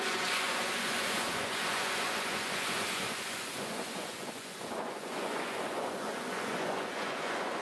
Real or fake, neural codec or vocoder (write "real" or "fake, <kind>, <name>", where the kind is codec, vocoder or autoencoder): fake, vocoder, Vocos